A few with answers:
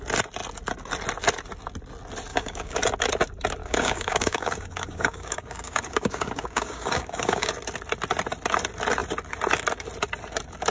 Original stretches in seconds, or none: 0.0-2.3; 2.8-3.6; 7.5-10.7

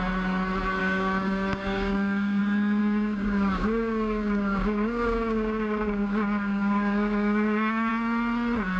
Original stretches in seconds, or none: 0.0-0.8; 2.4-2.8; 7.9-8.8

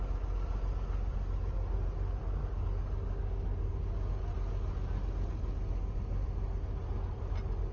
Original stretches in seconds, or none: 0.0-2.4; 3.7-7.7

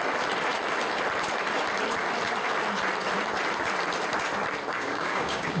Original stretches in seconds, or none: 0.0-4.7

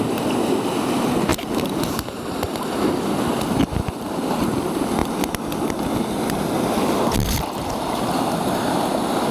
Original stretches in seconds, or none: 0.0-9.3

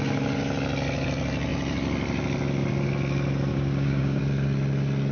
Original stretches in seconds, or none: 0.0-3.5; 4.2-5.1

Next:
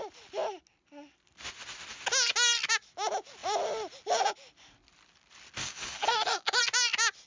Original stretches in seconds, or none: 0.0-5.6; 6.6-7.3